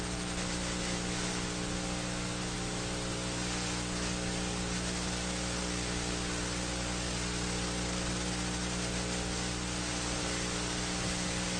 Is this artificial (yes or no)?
no